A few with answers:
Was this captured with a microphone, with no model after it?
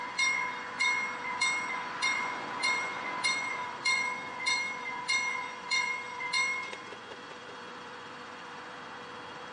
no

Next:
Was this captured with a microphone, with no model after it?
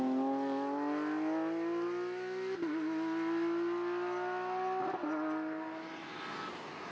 yes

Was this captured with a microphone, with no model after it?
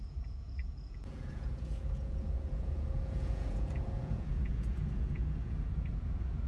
no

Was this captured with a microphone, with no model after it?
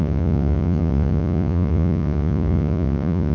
no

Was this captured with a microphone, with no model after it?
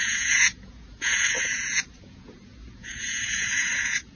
no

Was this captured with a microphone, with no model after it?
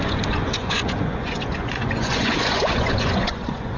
no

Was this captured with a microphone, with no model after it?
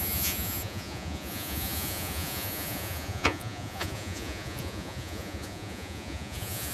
no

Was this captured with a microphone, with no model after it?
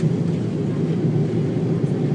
yes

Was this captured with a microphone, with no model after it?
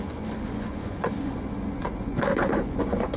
no